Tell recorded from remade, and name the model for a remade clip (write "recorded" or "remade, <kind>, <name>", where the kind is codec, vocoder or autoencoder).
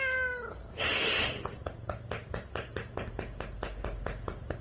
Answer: recorded